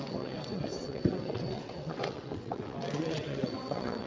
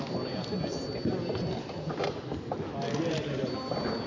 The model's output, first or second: first